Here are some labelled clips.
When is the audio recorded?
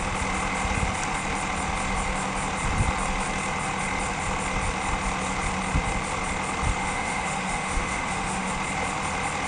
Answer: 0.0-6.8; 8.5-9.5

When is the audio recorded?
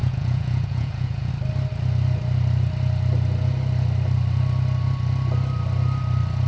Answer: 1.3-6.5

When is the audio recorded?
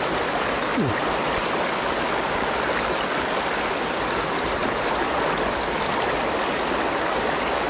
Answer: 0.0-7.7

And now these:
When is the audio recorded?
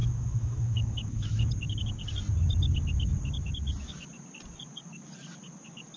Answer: 1.5-6.0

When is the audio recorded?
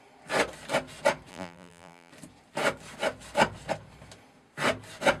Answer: 0.0-1.3; 2.1-5.2